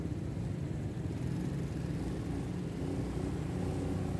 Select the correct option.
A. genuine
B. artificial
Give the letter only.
A